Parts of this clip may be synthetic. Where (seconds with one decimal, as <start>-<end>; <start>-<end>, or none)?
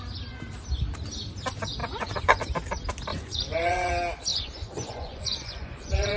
1.8-2.4; 3.1-3.9; 4.3-6.2